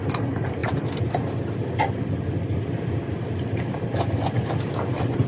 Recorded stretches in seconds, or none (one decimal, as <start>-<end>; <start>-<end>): 0.0-5.3